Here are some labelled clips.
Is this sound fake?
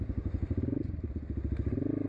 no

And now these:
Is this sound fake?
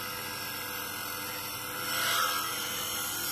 no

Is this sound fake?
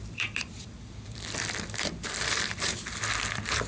yes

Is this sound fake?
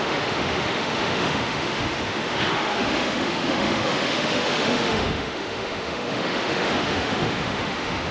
yes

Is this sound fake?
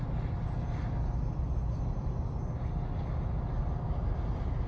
no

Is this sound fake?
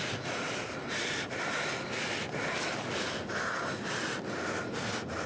no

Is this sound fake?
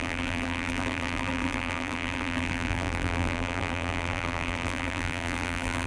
yes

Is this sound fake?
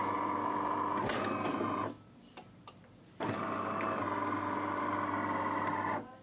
no